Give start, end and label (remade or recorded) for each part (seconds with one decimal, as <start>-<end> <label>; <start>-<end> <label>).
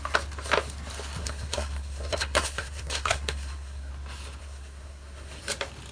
0.0-1.2 recorded; 1.2-3.9 remade; 3.9-4.4 recorded; 4.4-5.4 remade; 5.4-5.9 recorded